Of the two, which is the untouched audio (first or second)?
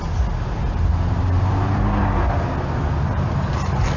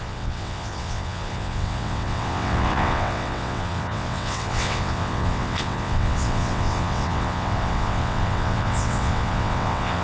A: first